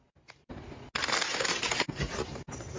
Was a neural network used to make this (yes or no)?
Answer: no